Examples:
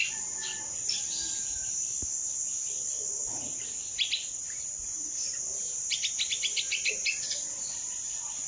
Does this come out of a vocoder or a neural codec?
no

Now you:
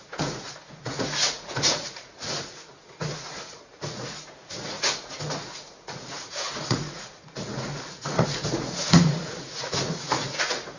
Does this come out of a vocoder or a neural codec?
yes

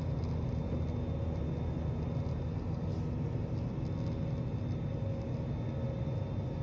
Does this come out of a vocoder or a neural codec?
no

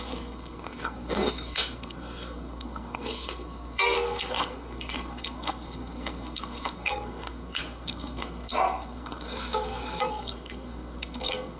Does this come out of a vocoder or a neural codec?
yes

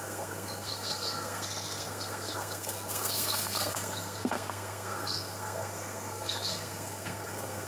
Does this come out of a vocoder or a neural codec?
yes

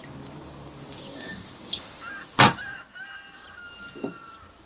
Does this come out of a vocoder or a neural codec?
no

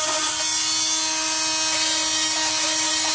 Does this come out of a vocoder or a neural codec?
no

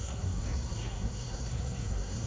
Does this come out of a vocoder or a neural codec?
yes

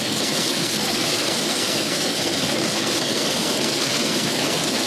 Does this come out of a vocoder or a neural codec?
yes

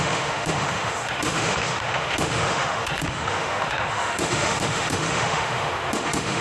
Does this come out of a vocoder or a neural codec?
yes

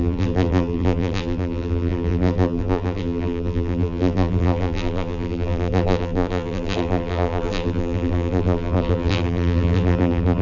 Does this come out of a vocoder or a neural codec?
yes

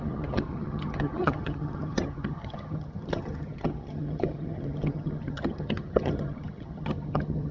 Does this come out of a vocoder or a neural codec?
yes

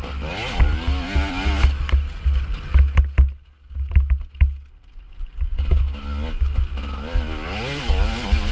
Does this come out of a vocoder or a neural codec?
no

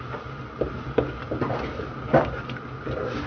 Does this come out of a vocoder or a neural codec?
no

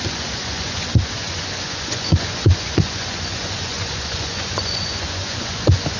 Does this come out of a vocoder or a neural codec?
yes